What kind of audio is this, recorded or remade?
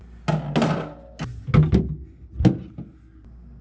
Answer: recorded